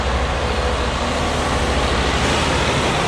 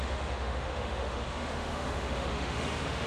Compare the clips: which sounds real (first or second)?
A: first